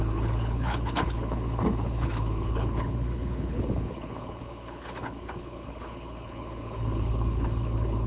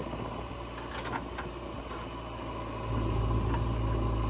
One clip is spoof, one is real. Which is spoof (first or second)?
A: first